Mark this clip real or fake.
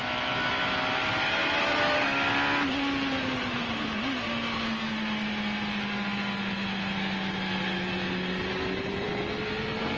real